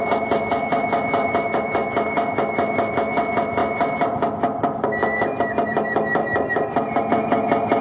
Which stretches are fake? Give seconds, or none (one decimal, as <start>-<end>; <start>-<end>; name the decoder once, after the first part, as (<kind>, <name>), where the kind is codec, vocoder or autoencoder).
none